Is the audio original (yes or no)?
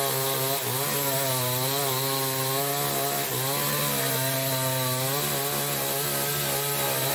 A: yes